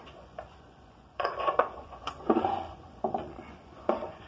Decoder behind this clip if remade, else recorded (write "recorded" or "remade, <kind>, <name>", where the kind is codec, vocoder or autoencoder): remade, vocoder, Vocos